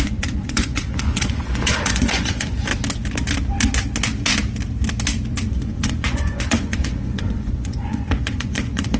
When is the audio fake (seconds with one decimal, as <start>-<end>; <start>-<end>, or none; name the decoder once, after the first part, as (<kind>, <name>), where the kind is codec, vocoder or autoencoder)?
0.0-2.7 (vocoder, Vocos); 5.5-9.0